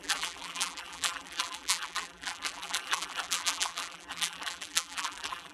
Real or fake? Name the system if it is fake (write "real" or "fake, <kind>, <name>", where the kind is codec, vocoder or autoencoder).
fake, vocoder, BigVGAN v2